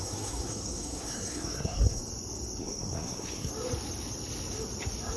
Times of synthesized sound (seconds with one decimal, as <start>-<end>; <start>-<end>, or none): 0.0-2.0; 2.6-3.5